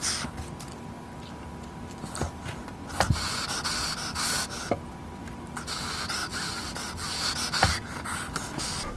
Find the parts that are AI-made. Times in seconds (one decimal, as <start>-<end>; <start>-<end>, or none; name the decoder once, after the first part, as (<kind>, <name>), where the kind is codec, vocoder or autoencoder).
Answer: none